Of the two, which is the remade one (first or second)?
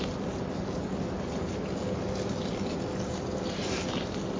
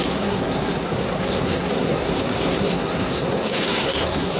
second